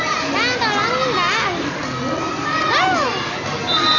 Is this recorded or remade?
recorded